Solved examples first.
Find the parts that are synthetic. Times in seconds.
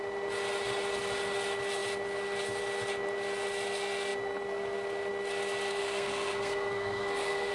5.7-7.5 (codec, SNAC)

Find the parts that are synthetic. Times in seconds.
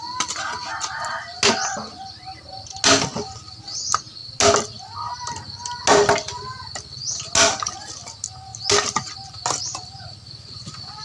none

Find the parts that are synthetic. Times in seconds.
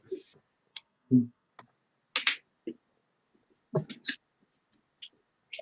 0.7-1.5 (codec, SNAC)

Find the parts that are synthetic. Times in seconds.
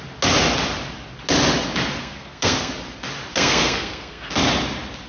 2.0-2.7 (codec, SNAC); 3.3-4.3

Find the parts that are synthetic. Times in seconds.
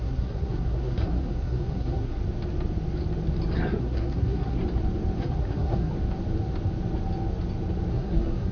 0.0-2.2 (codec, SNAC); 3.8-4.6; 5.2-5.9; 7.9-8.5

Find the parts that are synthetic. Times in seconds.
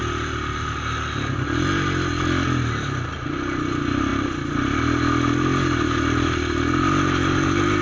none